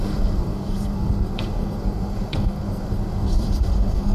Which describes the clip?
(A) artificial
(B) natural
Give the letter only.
A